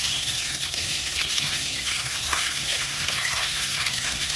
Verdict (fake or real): fake